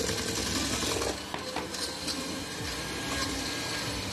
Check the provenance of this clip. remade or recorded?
recorded